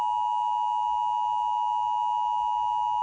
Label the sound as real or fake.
real